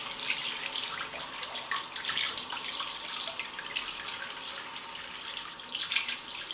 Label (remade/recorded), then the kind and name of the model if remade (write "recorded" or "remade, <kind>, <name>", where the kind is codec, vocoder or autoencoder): recorded